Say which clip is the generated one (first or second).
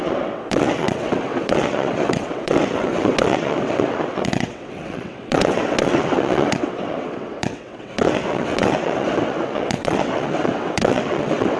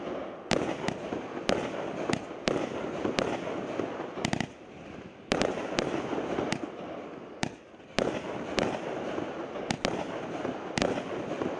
first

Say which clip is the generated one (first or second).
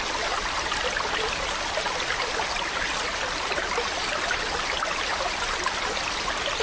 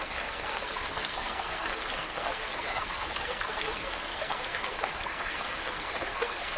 second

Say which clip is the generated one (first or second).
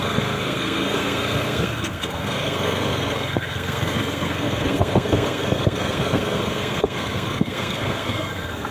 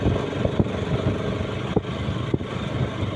first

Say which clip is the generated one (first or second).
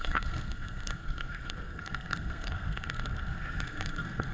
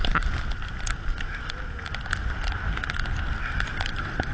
first